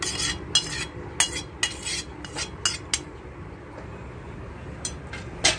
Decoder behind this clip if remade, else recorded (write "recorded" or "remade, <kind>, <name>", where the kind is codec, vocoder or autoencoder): recorded